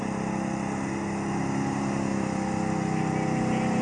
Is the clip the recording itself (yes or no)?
yes